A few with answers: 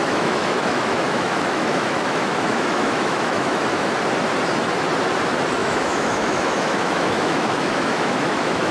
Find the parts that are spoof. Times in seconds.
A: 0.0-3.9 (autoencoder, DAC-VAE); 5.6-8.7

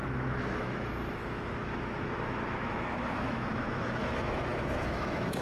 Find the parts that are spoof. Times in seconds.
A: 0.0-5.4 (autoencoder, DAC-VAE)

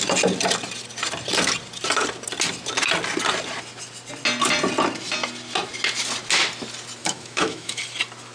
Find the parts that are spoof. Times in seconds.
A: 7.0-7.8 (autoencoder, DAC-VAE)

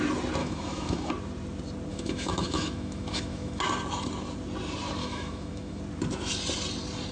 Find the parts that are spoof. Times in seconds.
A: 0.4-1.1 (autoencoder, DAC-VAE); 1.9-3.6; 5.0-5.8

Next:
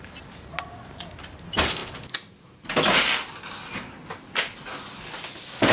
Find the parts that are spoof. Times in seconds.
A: none

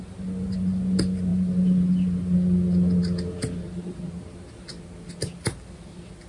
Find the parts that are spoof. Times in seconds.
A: none